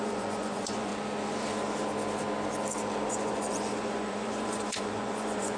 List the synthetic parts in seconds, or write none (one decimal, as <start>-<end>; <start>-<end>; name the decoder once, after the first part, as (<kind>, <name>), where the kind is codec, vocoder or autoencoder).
0.0-0.9 (vocoder, Vocos); 3.1-5.6